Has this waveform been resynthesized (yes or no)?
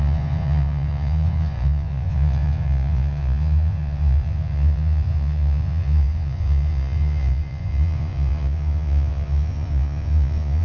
yes